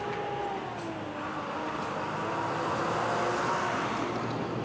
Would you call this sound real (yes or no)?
yes